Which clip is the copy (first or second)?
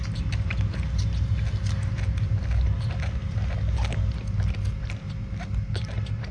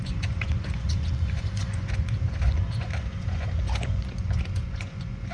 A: second